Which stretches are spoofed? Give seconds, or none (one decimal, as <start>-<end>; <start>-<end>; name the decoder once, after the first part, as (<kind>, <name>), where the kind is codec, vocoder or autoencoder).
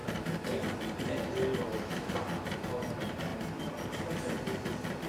none